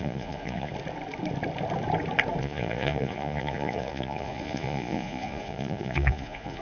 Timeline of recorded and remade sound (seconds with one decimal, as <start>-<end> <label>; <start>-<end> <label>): 0.0-0.7 remade; 0.7-2.4 recorded; 2.4-6.6 remade